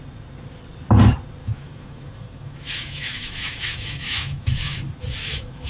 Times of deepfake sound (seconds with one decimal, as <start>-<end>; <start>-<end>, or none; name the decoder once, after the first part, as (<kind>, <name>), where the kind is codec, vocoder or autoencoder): 1.4-4.8 (autoencoder, DAC-VAE); 5.2-5.7